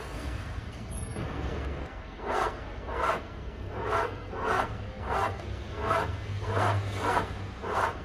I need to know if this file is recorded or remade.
remade